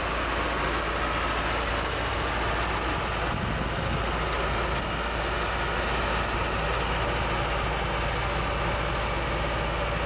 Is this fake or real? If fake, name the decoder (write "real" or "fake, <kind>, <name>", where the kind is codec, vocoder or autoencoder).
real